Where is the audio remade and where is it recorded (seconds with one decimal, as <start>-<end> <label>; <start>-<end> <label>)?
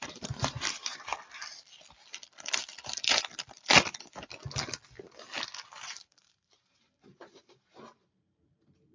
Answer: 0.0-1.1 remade; 1.1-6.2 recorded; 6.2-8.9 remade